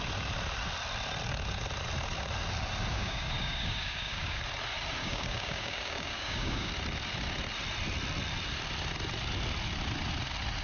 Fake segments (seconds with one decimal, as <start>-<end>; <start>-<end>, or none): 2.9-4.4; 5.0-6.7